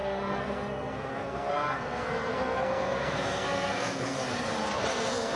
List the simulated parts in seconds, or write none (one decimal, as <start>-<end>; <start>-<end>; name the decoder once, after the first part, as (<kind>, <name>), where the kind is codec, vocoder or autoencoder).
0.0-4.2 (codec, SNAC); 4.9-5.4